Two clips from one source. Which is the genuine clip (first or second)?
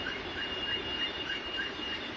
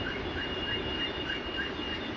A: second